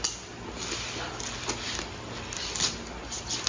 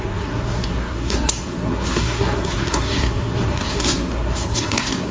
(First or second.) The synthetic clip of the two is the second